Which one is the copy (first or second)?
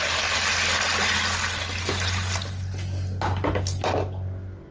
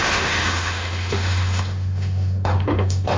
second